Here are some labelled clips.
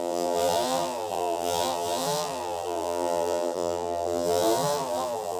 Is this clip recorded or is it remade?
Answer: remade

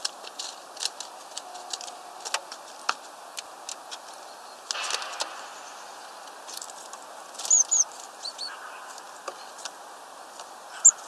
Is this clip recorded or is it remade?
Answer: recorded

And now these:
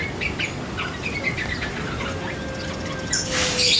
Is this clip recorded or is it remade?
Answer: recorded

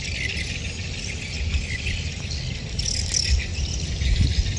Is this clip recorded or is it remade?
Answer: recorded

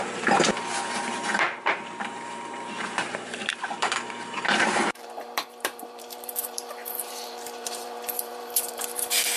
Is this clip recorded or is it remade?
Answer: remade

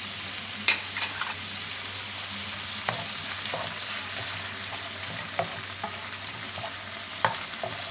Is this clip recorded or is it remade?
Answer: remade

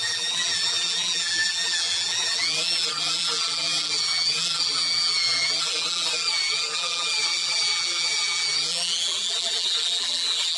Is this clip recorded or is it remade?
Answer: remade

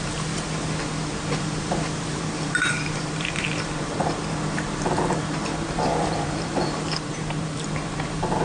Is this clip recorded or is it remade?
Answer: remade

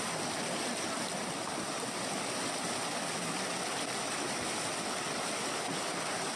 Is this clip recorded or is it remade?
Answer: recorded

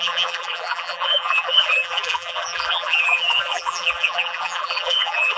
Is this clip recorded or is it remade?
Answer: remade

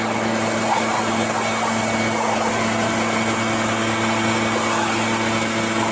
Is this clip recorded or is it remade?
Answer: recorded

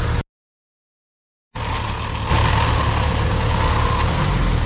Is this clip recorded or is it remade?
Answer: recorded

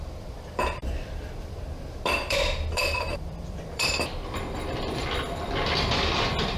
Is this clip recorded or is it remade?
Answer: remade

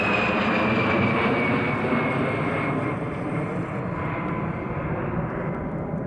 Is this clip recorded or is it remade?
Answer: recorded